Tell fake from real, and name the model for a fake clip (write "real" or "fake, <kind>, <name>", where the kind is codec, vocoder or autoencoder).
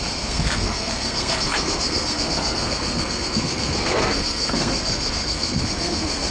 fake, codec, SNAC